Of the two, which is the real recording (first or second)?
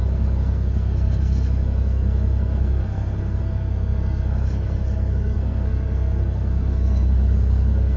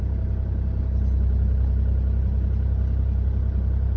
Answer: second